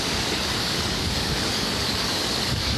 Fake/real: fake